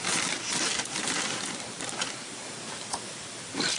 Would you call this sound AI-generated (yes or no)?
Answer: yes